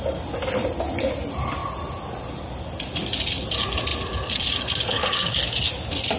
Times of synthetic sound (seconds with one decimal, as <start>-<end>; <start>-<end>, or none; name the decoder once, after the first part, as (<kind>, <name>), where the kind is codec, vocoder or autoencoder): none